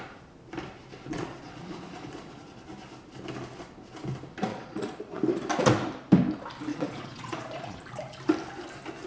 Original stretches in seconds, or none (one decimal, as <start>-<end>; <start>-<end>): 0.0-1.1; 2.6-4.5; 5.2-6.7; 7.8-9.1